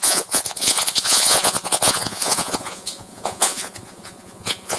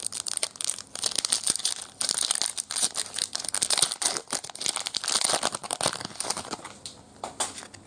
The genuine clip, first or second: second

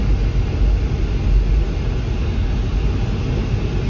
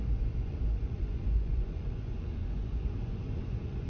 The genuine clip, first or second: first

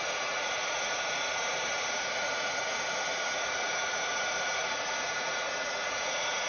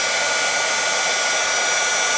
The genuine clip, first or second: second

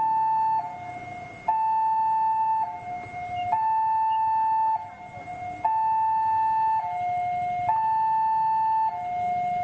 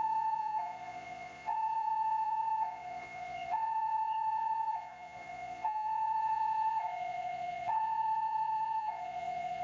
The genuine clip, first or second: first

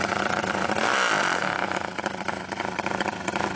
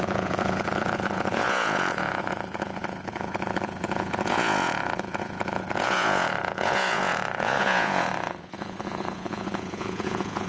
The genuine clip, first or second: first